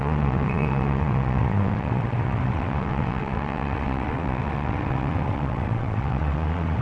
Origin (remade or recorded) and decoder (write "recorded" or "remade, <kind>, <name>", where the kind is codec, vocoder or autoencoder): remade, vocoder, WaveNeXt